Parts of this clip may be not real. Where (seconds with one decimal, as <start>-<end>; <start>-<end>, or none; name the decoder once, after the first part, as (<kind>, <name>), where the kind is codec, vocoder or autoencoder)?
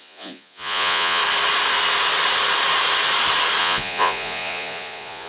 0.0-1.2 (vocoder, Vocos); 3.6-5.3